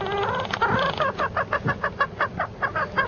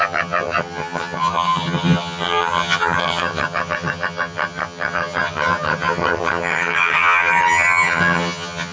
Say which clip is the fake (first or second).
second